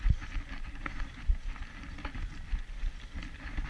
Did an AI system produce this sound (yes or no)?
no